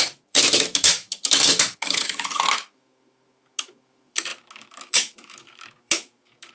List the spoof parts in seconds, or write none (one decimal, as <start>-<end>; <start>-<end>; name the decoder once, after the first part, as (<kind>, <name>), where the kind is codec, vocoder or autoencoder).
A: 0.0-6.5 (autoencoder, DAC-VAE)

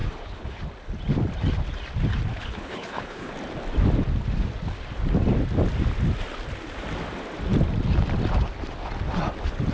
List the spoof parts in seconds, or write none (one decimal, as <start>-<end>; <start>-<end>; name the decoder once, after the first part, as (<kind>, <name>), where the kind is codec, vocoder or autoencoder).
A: 0.0-0.6 (codec, HILCodec); 2.3-3.3

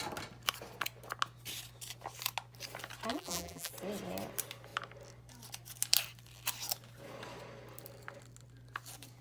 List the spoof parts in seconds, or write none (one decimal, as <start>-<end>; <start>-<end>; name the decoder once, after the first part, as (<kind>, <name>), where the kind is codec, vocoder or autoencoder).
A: 3.1-3.7 (vocoder, BigVGAN v2)

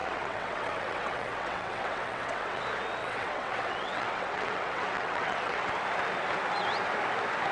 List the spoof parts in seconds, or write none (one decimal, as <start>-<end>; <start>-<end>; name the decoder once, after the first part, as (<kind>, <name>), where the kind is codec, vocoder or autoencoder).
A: 0.0-2.6 (vocoder, WaveNeXt); 3.0-5.7

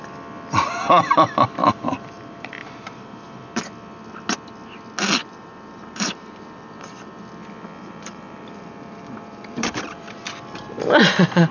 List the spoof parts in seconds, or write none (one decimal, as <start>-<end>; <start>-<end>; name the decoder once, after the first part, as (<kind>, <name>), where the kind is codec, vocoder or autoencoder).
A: 1.6-3.4 (vocoder, BigVGAN v2); 5.2-7.2; 7.8-10.2

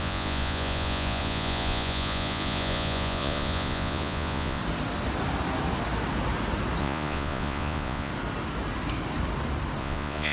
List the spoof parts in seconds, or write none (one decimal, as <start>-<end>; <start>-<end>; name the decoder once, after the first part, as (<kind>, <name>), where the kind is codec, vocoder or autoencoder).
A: 0.0-4.6 (vocoder, Vocos); 6.8-8.1; 9.8-10.3